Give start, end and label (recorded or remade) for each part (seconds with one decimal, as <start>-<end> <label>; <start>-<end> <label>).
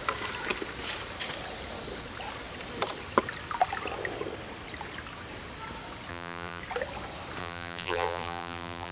0.0-6.1 recorded; 6.1-6.6 remade; 6.6-7.4 recorded; 7.4-8.9 remade